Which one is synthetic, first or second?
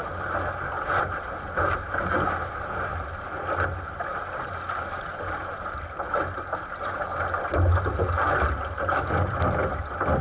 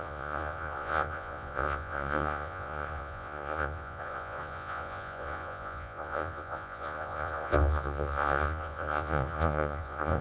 second